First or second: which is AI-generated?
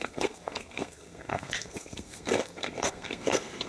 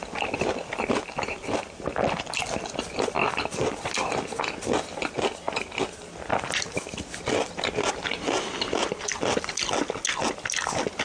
first